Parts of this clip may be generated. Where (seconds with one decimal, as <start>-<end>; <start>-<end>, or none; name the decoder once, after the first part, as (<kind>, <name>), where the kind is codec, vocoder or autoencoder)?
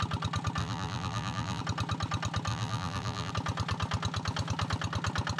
0.6-1.6 (vocoder, BigVGAN v2); 2.5-3.3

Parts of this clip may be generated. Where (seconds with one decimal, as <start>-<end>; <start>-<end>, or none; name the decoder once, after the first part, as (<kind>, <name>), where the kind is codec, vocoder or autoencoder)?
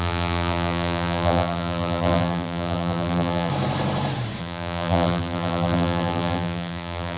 0.0-3.5 (vocoder, BigVGAN v2); 4.4-7.2